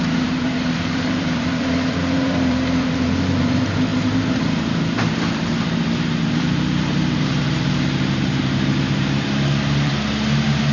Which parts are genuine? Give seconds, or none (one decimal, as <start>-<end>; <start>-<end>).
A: none